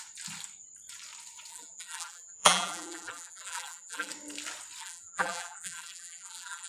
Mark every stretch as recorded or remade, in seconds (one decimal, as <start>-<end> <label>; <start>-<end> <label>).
0.0-1.5 recorded; 1.5-4.1 remade; 4.1-4.8 recorded; 4.8-6.7 remade